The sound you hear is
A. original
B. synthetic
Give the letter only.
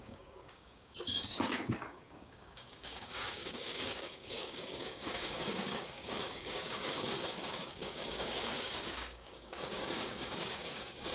B